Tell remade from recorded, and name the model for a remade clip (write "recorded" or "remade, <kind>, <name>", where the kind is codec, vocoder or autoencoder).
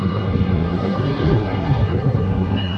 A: remade, codec, SNAC